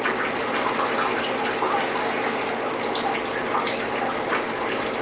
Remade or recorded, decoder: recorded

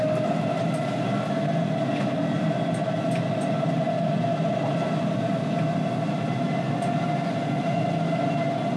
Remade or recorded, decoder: recorded